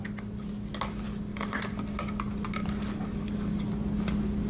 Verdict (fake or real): real